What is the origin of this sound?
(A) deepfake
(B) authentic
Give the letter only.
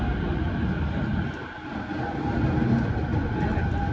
B